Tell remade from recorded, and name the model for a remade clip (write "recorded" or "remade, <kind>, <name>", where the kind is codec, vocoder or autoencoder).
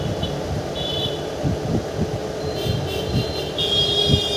recorded